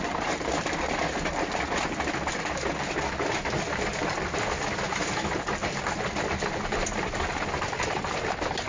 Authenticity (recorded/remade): recorded